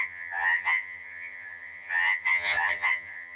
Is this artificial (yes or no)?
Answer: yes